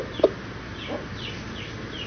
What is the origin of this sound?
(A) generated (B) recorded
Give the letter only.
B